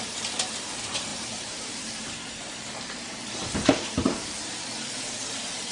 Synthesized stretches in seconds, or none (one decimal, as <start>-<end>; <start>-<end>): 1.1-4.5